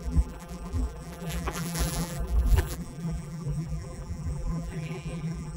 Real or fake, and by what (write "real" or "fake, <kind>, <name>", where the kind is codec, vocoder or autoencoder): fake, vocoder, BigVGAN v2